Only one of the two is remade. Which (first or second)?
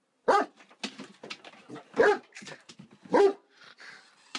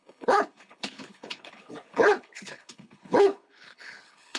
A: second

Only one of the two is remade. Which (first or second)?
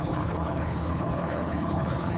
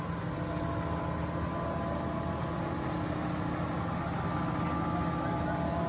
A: first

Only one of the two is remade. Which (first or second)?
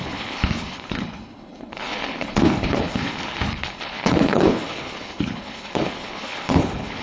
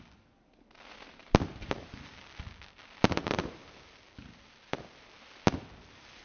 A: first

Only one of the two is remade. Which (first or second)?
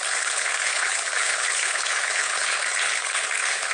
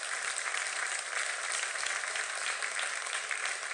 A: first